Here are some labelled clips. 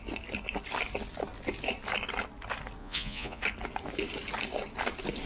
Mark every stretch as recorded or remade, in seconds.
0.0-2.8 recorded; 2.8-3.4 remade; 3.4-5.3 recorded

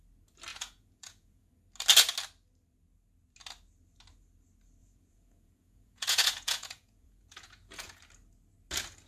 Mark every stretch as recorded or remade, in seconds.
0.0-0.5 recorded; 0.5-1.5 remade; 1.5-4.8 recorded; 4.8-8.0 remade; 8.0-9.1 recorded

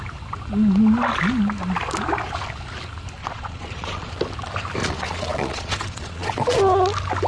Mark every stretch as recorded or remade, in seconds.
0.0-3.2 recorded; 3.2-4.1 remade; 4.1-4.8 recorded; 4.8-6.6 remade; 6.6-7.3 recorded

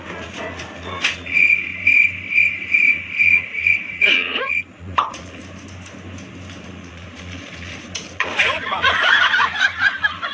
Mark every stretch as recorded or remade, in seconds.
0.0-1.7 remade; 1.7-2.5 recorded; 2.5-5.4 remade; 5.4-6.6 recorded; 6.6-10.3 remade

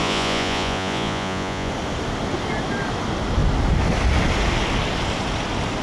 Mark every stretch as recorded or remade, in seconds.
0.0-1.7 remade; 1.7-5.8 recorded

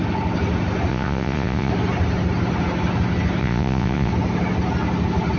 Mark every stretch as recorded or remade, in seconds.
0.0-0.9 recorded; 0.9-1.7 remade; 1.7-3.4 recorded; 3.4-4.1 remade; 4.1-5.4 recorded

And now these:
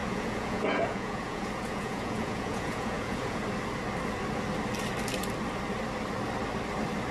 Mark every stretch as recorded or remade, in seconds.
0.0-3.4 remade; 3.4-7.1 recorded

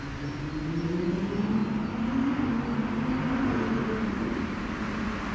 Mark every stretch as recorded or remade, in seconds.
0.0-5.3 recorded